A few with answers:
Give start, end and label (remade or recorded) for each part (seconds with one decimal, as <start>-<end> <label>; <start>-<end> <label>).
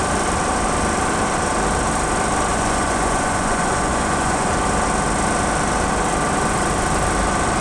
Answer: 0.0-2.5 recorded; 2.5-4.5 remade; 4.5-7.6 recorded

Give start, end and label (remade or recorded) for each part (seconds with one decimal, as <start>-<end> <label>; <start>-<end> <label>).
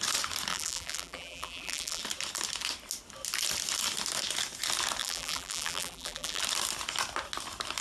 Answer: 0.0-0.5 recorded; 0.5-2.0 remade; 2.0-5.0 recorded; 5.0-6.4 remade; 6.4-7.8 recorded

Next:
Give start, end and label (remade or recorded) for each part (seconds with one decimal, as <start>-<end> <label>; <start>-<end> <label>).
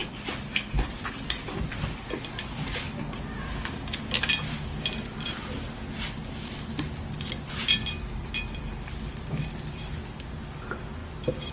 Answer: 0.0-1.7 remade; 1.7-9.1 recorded; 9.1-9.9 remade; 9.9-11.5 recorded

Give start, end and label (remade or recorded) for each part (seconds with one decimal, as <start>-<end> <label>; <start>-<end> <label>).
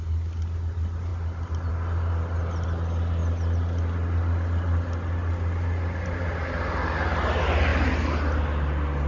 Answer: 0.0-9.1 recorded